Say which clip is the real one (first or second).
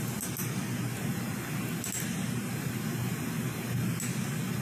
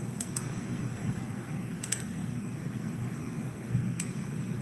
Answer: first